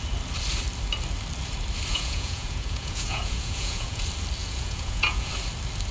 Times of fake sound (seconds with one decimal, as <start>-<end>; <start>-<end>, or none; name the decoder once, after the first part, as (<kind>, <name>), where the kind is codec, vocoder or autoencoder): 1.9-4.0 (vocoder, Vocos); 4.4-5.3